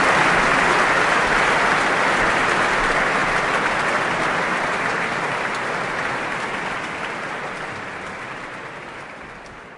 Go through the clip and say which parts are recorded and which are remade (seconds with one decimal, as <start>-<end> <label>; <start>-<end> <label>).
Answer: 0.0-9.8 recorded